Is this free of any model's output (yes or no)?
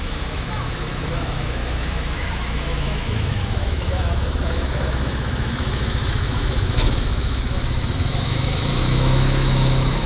no